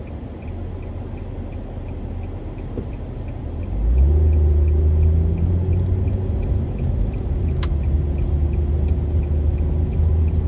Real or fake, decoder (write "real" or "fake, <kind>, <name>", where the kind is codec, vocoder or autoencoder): real